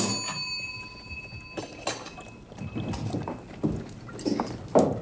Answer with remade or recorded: recorded